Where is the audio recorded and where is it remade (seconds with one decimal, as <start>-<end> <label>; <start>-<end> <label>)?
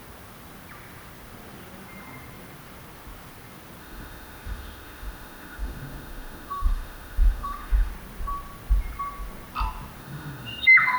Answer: 0.0-3.8 recorded; 3.8-7.9 remade; 7.9-10.0 recorded; 10.0-11.0 remade